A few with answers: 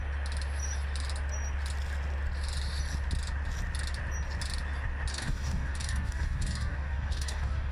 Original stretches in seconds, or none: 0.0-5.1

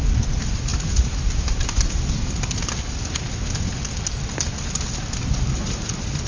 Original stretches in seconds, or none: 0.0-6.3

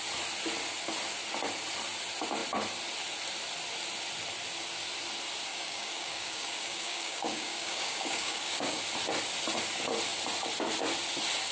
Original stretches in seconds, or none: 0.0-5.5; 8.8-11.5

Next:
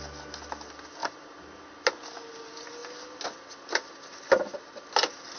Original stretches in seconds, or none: 0.0-5.4

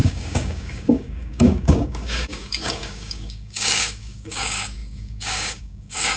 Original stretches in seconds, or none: none